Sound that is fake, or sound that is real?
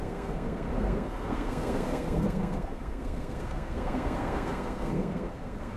fake